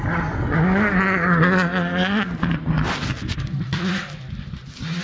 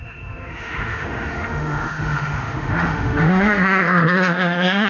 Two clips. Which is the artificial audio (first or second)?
second